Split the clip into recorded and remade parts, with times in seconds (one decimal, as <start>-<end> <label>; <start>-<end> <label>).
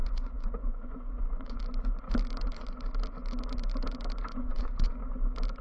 0.0-1.6 remade; 1.6-4.3 recorded; 4.3-5.1 remade; 5.1-5.6 recorded